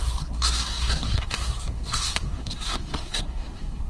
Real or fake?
fake